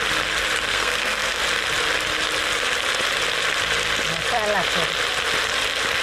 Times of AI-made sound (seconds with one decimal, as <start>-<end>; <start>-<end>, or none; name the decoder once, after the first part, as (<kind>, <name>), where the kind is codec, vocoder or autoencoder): 0.7-1.4 (codec, SNAC)